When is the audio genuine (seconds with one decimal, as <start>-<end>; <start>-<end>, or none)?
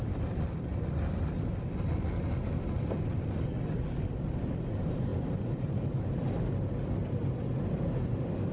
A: 0.0-5.1; 6.4-8.5